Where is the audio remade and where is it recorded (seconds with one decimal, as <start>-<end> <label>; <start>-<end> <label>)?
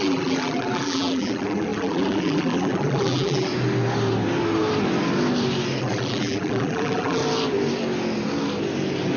0.0-3.5 remade; 3.5-5.8 recorded; 5.8-7.2 remade; 7.2-9.2 recorded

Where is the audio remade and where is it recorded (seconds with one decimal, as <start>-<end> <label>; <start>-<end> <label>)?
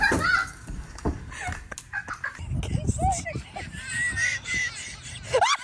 0.0-0.4 recorded; 0.4-1.3 remade; 1.3-5.6 recorded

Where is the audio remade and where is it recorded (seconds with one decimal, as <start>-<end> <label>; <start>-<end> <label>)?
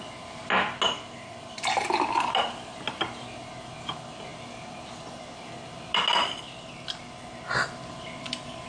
0.0-8.7 recorded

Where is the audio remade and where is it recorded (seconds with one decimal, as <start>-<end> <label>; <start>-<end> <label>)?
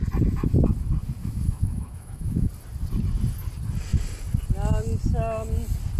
0.0-1.2 recorded; 1.2-2.5 remade; 2.5-6.0 recorded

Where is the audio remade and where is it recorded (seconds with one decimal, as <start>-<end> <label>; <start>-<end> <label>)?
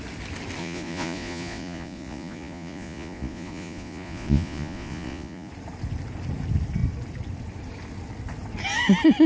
0.0-0.6 recorded; 0.6-5.5 remade; 5.5-9.3 recorded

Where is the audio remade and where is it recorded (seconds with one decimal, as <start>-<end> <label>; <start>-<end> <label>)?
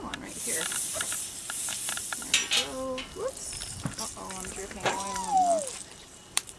0.0-2.0 remade; 2.0-6.0 recorded; 6.0-6.6 remade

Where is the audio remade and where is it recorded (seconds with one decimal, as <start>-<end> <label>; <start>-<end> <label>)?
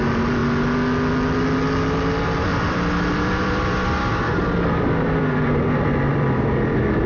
0.0-2.5 recorded; 2.5-7.1 remade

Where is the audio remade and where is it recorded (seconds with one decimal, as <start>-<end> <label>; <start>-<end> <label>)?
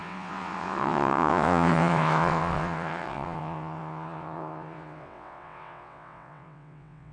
0.0-7.1 remade